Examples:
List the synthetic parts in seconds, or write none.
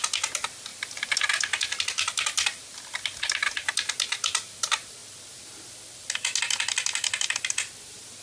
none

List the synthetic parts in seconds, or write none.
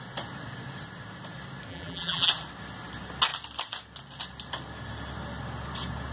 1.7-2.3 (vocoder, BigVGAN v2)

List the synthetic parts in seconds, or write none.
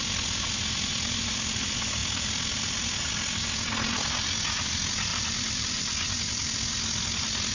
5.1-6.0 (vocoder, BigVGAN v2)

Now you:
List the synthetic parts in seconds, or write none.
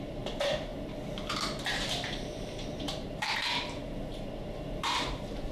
0.0-0.7 (vocoder, BigVGAN v2); 1.8-5.5